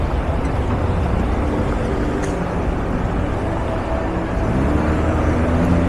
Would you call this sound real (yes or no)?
yes